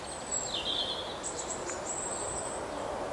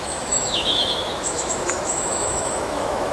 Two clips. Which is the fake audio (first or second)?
second